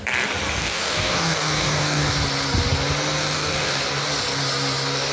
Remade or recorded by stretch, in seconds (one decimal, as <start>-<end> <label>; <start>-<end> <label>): 0.0-0.6 recorded; 0.6-2.1 remade; 2.1-3.2 recorded; 3.2-3.8 remade; 3.8-5.1 recorded